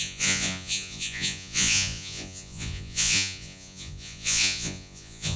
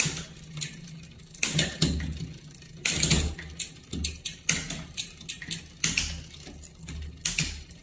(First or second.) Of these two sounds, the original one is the second